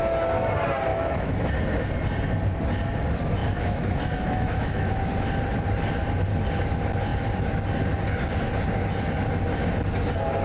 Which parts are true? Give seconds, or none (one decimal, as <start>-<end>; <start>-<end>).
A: 0.0-0.9; 1.5-3.4; 5.0-10.4